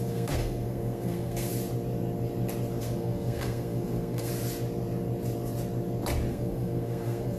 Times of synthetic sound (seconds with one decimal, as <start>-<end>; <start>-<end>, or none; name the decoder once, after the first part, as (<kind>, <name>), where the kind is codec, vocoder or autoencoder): 0.0-1.5 (codec, SNAC); 2.8-4.3; 6.3-7.4